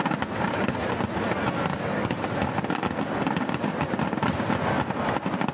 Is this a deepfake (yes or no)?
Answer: no